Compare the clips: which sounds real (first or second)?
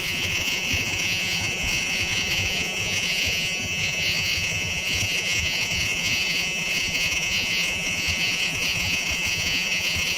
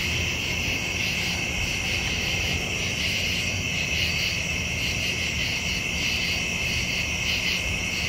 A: second